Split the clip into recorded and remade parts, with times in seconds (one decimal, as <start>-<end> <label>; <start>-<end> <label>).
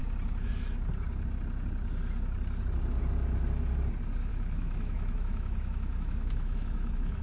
0.0-4.3 recorded; 4.3-7.2 remade